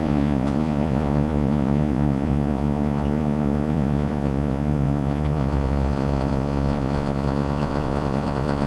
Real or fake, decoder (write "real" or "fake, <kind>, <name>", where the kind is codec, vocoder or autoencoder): fake, vocoder, Vocos